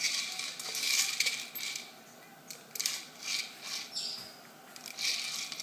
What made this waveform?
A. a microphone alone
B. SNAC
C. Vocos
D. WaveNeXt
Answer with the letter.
A